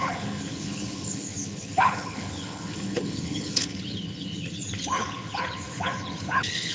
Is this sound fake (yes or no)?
yes